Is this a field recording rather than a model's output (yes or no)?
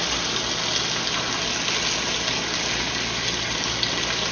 yes